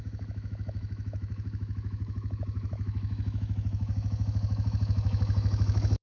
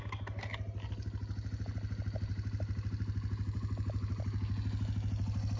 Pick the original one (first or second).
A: second